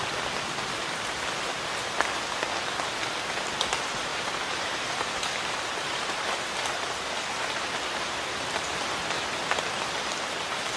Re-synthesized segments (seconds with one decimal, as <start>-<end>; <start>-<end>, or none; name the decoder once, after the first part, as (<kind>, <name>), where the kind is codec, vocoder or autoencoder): 4.1-8.3 (vocoder, BigVGAN v2)